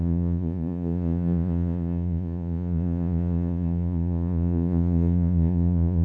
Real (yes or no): no